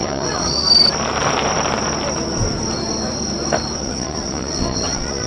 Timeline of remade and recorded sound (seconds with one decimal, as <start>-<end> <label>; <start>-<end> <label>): 0.0-0.6 remade; 0.6-3.8 recorded; 3.8-5.3 remade